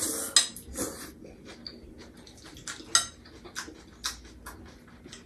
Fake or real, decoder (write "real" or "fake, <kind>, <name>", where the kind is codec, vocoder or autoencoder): real